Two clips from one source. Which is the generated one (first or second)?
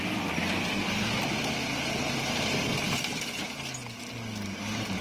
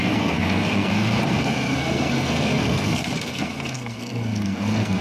second